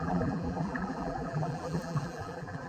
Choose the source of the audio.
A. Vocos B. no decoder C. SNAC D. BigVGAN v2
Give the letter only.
D